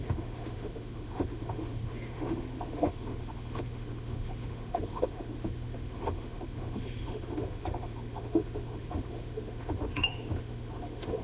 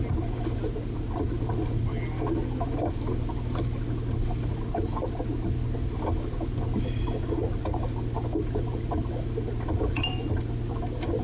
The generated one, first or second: first